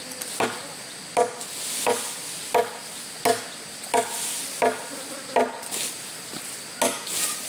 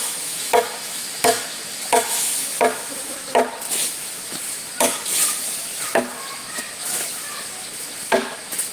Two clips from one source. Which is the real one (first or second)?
first